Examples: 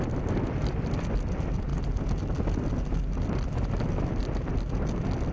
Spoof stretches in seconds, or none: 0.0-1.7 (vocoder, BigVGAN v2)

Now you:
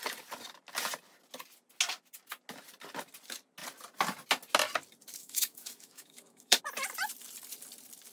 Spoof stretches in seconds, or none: 5.2-6.6 (autoencoder, DAC-VAE)

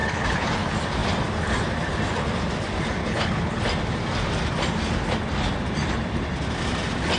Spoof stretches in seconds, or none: 0.0-0.5 (codec, HILCodec); 3.0-3.6

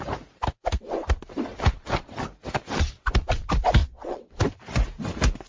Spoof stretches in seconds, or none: 3.8-4.4 (vocoder, WaveNeXt)

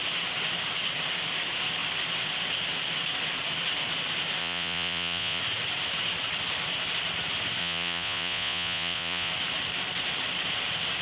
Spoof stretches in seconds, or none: 4.4-5.4 (vocoder, Vocos); 7.6-9.3

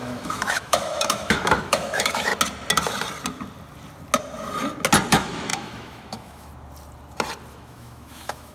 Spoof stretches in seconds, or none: 0.0-2.3 (autoencoder, DAC-VAE); 5.1-6.5; 7.5-8.5

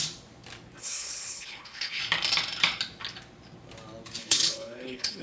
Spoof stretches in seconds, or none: 0.8-2.0 (codec, HILCodec); 4.2-5.2

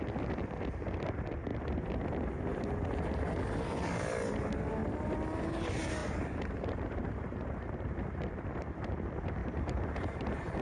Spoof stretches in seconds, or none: 6.0-8.8 (vocoder, BigVGAN v2); 9.4-10.6